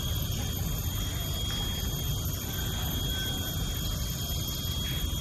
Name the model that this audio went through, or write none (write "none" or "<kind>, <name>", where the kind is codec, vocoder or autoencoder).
vocoder, BigVGAN v2